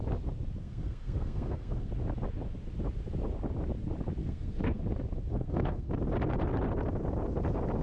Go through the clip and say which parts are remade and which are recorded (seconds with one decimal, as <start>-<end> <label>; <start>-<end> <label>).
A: 0.0-0.6 recorded; 0.6-1.9 remade; 1.9-4.2 recorded; 4.2-4.8 remade; 4.8-5.3 recorded; 5.3-5.9 remade; 5.9-7.8 recorded